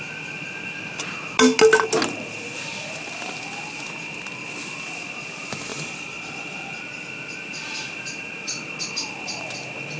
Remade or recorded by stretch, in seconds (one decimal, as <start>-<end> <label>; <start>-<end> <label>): 0.0-5.7 recorded; 5.7-6.8 remade; 6.8-10.0 recorded